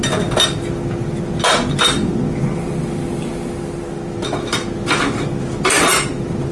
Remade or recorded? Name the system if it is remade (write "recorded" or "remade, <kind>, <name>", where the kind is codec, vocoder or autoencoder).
recorded